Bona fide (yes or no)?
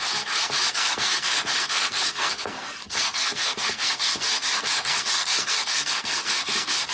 no